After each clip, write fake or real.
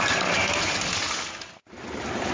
real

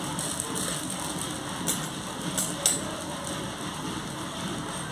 real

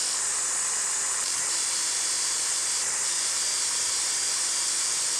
fake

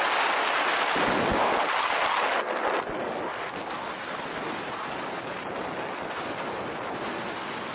real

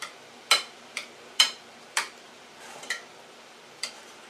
fake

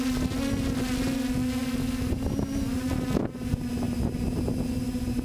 real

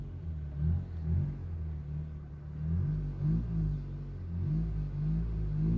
real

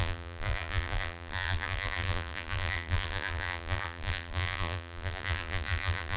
fake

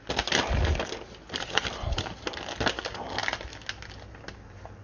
real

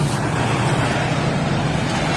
fake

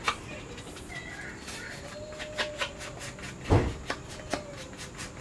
real